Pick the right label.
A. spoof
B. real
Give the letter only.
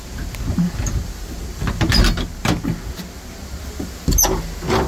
B